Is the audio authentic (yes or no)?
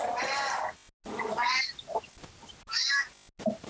yes